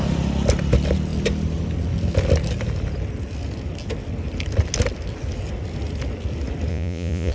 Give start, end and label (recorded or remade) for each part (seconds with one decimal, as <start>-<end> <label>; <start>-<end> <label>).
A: 0.0-6.7 recorded; 6.7-7.3 remade